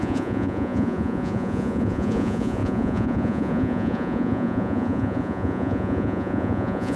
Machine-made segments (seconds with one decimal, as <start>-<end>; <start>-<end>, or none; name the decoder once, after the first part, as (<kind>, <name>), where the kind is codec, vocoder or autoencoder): 0.0-7.0 (vocoder, Vocos)